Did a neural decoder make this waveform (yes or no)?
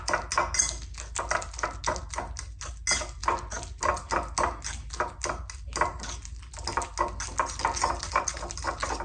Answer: no